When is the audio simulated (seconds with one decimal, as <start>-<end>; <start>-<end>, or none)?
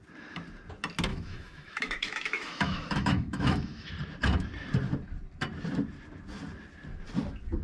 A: 1.1-3.9